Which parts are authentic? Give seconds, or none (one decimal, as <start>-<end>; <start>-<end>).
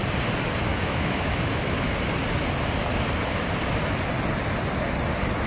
0.0-0.7; 1.9-5.5